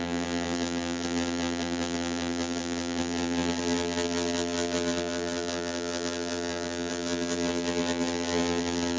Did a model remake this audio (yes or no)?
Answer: yes